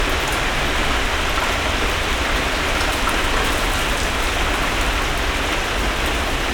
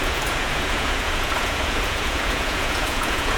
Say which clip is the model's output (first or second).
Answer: second